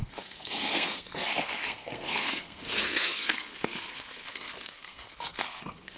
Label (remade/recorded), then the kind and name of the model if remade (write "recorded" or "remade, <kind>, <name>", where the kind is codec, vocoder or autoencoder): remade, codec, SNAC